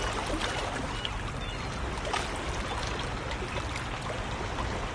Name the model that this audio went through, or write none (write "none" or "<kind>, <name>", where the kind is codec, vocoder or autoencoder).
none